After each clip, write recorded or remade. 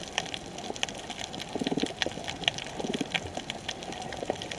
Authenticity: recorded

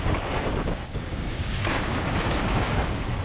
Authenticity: remade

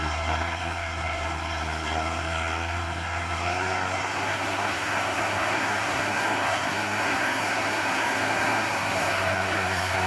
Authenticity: remade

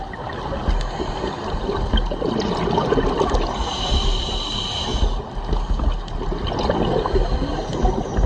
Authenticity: recorded